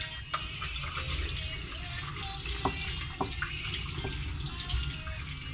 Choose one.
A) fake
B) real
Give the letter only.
B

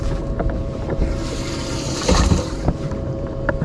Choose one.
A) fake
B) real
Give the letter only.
A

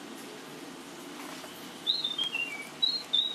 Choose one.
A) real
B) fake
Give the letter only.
A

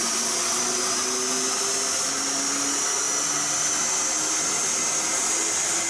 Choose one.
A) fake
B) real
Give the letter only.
B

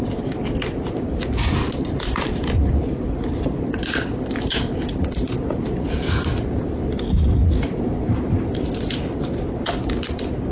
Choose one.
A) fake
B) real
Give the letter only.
B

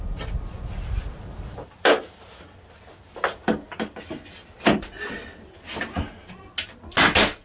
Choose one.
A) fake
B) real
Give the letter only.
B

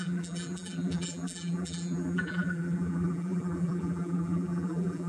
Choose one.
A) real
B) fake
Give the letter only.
B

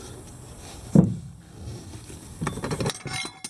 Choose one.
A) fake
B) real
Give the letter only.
B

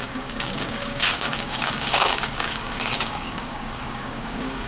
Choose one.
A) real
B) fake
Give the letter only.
B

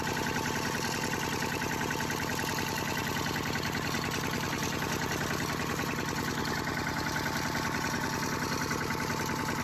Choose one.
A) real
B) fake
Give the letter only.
A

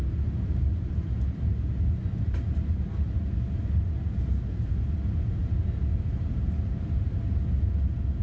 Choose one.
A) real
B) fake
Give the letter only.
A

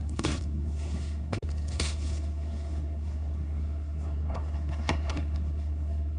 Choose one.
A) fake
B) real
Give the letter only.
A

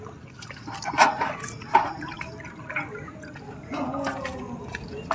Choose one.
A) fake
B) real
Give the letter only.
B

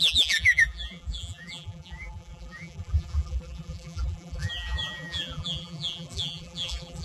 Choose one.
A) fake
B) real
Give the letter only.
A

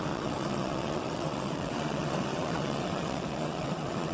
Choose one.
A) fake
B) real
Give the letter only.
A